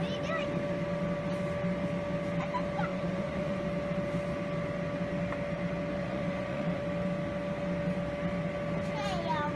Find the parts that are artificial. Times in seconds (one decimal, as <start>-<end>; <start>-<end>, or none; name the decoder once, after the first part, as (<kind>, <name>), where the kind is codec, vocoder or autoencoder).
2.9-3.6 (vocoder, Vocos); 6.0-6.8